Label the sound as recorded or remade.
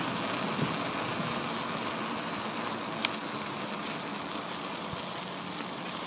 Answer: recorded